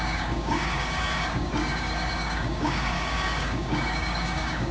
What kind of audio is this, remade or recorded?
remade